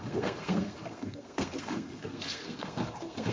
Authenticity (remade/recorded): remade